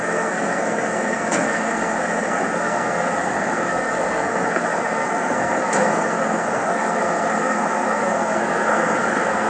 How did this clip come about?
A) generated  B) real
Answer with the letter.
A